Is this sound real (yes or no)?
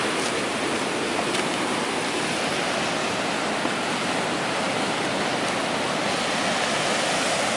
yes